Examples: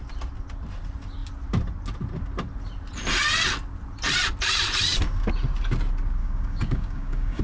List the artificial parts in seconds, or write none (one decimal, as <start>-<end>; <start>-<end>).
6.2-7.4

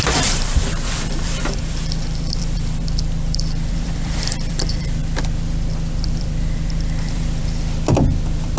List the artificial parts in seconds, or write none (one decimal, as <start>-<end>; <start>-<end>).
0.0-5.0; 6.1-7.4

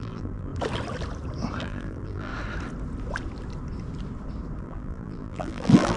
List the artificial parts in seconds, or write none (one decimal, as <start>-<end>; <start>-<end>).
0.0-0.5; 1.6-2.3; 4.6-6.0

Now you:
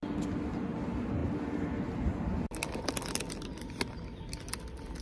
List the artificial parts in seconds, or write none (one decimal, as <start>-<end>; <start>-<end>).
none